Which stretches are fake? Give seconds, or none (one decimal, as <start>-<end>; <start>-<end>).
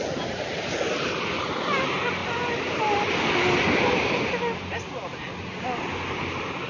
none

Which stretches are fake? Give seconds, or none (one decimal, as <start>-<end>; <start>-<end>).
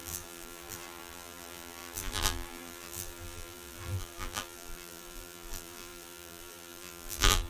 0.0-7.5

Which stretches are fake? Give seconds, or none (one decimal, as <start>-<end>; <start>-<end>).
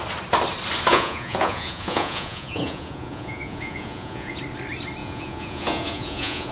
0.9-4.4; 5.0-6.5